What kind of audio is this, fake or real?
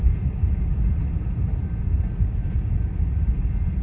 real